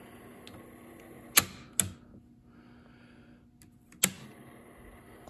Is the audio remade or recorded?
recorded